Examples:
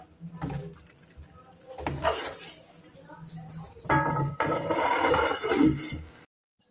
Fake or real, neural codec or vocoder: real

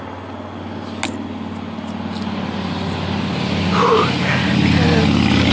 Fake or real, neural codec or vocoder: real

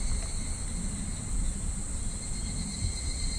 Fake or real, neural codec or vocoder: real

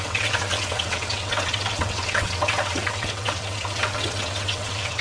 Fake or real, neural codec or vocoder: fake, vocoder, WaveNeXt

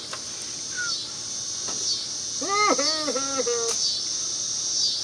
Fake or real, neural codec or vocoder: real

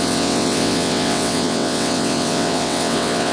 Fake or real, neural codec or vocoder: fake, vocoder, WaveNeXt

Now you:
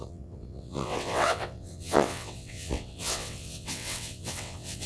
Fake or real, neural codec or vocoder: fake, vocoder, WaveNeXt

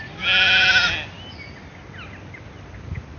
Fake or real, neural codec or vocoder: real